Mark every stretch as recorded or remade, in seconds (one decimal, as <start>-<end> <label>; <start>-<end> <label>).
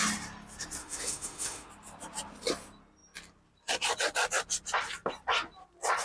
0.0-0.8 recorded; 0.8-1.7 remade; 1.7-6.0 recorded